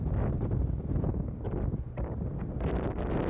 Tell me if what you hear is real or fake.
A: fake